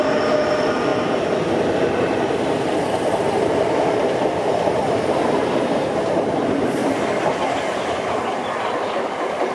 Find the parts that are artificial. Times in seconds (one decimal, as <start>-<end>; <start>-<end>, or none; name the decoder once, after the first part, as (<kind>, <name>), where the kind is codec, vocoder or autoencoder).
0.0-0.9 (vocoder, BigVGAN v2); 4.7-6.8; 8.5-9.5